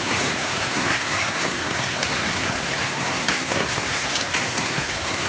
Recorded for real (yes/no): no